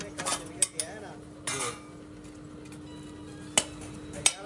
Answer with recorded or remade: recorded